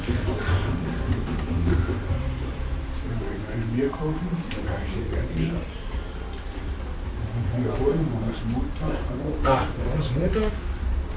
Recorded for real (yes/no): no